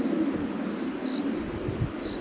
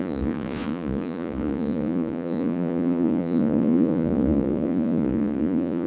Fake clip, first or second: second